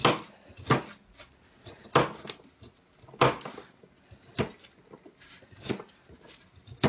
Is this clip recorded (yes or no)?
yes